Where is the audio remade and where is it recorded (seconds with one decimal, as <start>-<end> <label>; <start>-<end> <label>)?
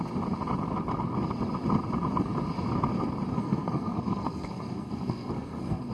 0.0-3.3 recorded; 3.3-5.9 remade